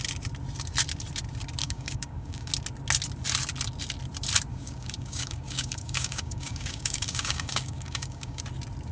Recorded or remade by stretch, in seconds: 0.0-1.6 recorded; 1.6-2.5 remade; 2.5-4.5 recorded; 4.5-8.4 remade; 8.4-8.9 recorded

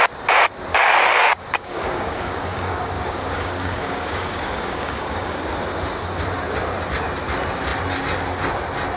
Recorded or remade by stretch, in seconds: 0.0-0.7 recorded; 0.7-5.4 remade; 5.4-9.0 recorded